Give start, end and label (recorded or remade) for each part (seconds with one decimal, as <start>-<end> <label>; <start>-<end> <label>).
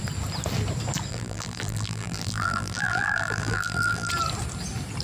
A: 0.0-1.1 recorded; 1.1-4.1 remade; 4.1-5.0 recorded